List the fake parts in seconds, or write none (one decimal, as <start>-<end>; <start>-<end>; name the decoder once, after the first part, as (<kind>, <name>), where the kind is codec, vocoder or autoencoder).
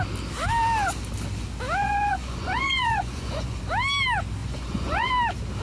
1.8-3.6 (vocoder, Vocos); 4.4-5.1